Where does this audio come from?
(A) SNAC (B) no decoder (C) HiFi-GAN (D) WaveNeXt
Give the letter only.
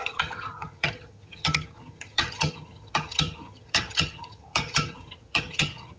C